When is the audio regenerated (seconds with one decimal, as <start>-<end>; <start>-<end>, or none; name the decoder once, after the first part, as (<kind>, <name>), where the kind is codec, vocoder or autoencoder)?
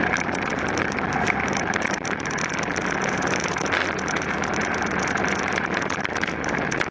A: 0.0-6.9 (vocoder, BigVGAN v2)